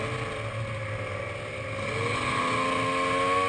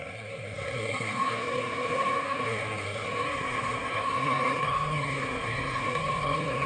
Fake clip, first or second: second